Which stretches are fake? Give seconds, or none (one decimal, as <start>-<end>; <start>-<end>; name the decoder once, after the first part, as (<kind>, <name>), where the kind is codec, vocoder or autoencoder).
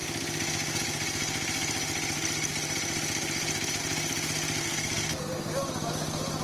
4.6-5.5 (codec, SNAC)